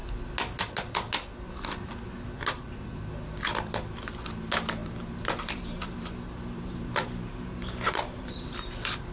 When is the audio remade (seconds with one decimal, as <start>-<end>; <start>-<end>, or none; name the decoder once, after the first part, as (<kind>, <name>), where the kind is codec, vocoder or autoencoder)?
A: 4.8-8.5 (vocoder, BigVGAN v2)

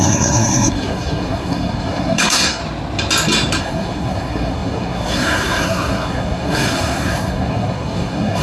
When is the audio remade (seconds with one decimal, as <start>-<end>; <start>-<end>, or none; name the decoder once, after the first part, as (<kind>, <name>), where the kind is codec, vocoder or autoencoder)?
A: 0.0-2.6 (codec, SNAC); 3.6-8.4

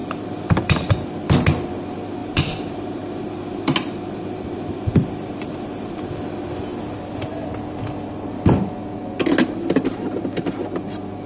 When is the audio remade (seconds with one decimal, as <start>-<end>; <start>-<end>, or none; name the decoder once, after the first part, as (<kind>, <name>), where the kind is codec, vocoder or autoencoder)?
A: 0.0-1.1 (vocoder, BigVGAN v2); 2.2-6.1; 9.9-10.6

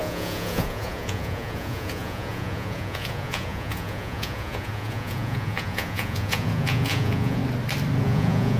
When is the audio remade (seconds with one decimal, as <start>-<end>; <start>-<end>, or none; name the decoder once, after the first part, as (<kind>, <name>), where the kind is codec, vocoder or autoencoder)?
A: 0.0-7.4 (vocoder, Vocos); 8.0-8.6

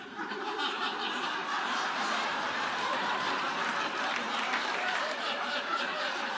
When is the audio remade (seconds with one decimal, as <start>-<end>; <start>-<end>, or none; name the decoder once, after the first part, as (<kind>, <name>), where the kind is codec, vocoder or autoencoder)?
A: 0.0-3.6 (vocoder, BigVGAN v2); 4.3-6.4

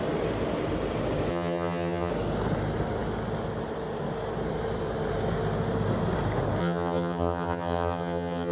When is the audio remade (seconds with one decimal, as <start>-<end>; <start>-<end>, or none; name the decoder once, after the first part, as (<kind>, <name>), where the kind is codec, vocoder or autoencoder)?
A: 1.3-2.1 (vocoder, HiFi-GAN); 6.6-8.5

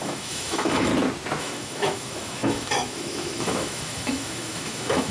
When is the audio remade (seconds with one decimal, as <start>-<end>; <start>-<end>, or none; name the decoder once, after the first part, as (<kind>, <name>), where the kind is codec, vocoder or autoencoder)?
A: 0.0-0.9 (autoencoder, DAC-VAE); 1.4-5.1

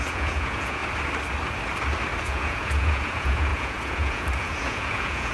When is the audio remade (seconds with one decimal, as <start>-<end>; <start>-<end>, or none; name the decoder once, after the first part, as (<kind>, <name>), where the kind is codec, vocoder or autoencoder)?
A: 0.0-0.8 (vocoder, Vocos); 2.2-5.3